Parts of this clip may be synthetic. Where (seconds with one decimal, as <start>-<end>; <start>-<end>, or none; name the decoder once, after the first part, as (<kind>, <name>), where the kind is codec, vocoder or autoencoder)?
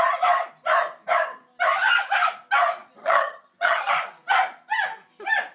3.0-3.9 (vocoder, HiFi-GAN)